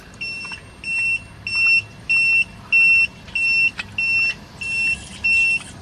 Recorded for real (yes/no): yes